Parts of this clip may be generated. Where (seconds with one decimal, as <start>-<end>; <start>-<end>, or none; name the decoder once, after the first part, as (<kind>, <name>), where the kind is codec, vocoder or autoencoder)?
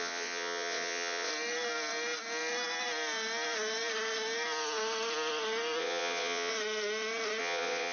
0.0-1.3 (vocoder, WaveNeXt); 5.8-6.5; 7.4-7.9